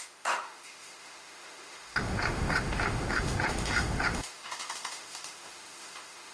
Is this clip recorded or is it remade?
remade